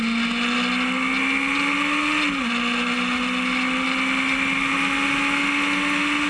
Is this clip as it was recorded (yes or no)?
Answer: yes